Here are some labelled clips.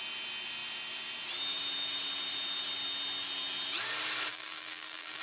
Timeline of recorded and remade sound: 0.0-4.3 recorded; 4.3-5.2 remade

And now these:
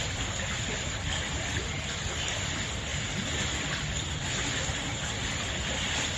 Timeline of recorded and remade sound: 0.0-6.2 recorded